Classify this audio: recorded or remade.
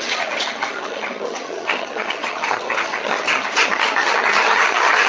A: remade